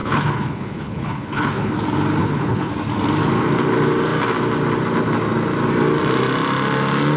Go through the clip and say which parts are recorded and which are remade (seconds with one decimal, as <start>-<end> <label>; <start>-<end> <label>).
0.0-1.7 remade; 1.7-2.2 recorded; 2.2-2.7 remade; 2.7-7.2 recorded